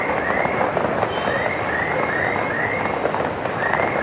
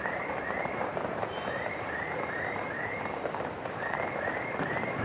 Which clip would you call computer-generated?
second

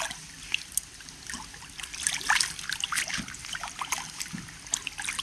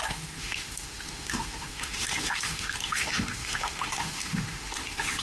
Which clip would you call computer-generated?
second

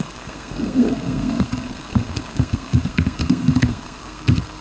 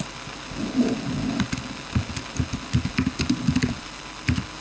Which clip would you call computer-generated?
first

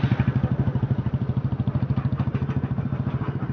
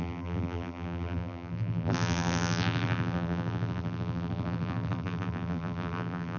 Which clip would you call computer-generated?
second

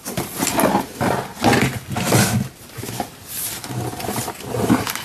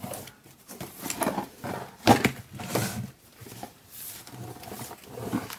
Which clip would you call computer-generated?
second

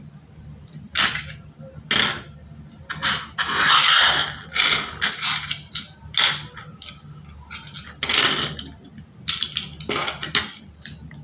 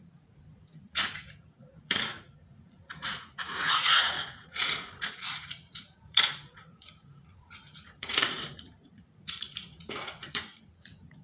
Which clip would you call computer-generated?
second